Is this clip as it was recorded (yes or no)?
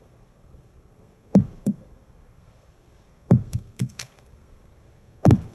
no